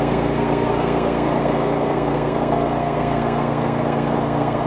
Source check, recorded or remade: remade